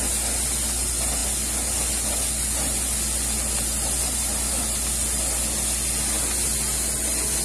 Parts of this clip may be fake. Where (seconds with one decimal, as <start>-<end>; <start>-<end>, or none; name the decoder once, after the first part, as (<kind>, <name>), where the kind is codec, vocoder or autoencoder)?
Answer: none